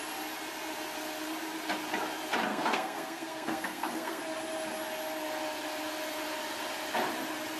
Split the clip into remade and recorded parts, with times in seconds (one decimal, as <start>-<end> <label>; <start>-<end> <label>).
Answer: 0.0-2.5 recorded; 2.5-4.2 remade; 4.2-7.6 recorded